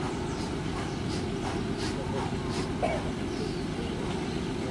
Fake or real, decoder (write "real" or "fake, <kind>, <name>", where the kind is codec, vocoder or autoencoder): real